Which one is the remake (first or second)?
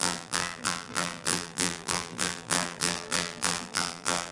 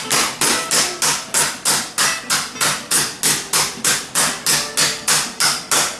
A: first